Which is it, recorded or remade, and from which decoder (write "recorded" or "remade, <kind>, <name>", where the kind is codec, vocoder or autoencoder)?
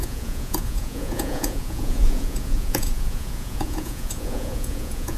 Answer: remade, vocoder, Vocos